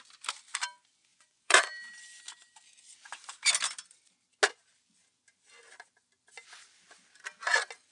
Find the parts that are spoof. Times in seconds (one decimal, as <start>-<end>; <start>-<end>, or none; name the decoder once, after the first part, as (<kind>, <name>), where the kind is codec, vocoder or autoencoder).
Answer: 1.1-1.7 (vocoder, Vocos)